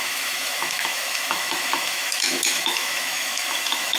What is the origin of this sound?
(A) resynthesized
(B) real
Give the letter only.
A